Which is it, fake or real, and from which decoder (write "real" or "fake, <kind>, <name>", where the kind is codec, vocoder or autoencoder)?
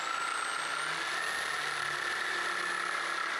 real